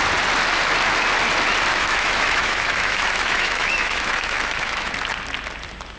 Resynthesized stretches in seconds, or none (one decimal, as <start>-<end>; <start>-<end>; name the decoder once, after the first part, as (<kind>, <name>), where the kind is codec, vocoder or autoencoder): 1.7-4.9 (autoencoder, DAC-VAE)